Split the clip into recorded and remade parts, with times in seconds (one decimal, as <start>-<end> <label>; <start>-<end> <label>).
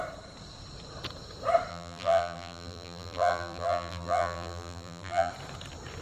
0.0-1.7 recorded; 1.7-5.3 remade; 5.3-6.0 recorded